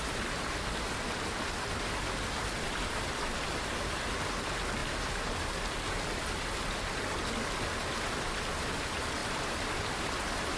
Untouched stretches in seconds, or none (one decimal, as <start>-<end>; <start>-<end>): 0.0-10.6